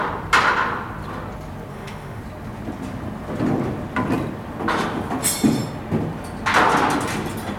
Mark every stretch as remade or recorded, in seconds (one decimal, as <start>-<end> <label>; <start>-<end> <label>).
0.0-1.7 recorded; 1.7-2.2 remade; 2.2-7.6 recorded